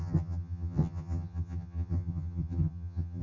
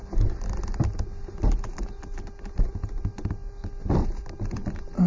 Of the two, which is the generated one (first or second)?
first